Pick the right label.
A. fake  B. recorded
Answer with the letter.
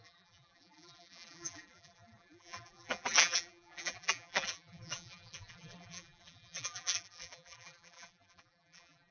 A